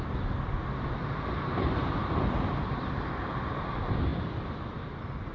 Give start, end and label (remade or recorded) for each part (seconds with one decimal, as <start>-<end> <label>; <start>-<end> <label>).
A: 0.0-2.0 recorded; 2.0-3.5 remade; 3.5-4.1 recorded; 4.1-5.3 remade